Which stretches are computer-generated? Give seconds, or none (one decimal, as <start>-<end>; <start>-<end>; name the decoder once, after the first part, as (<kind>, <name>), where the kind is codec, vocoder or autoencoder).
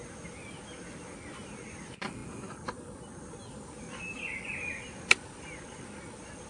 none